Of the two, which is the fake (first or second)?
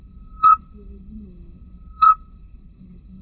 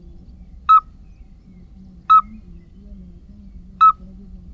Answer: first